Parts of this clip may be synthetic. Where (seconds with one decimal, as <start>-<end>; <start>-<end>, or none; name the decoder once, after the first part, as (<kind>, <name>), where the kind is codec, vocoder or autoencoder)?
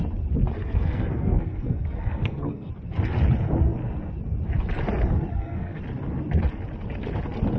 0.6-2.7 (codec, SNAC); 5.3-5.8